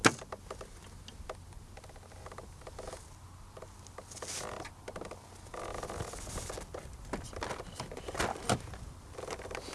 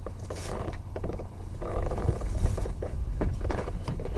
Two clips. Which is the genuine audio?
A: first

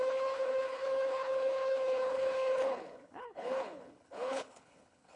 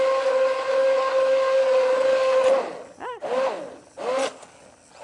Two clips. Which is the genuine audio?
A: second